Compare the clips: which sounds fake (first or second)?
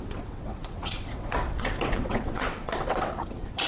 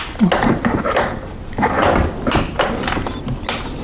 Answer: first